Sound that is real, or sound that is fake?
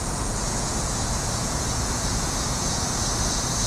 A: fake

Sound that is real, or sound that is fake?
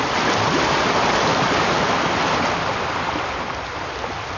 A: real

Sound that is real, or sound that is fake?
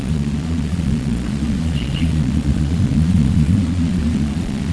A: fake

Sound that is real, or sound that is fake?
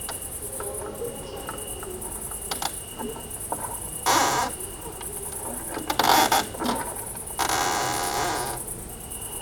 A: real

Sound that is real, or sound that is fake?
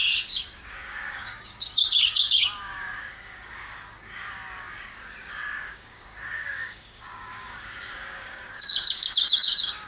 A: fake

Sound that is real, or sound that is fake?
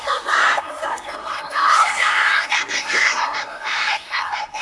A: fake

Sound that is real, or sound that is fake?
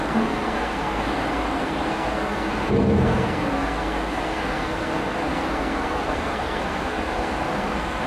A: fake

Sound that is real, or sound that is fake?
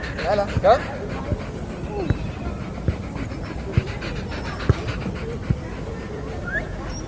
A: real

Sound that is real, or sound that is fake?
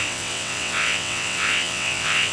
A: fake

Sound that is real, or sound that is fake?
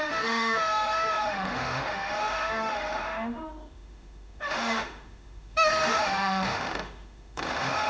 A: fake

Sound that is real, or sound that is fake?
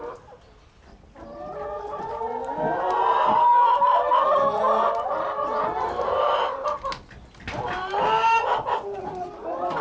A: real